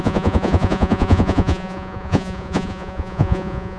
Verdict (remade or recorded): remade